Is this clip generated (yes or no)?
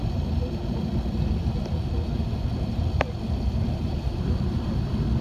yes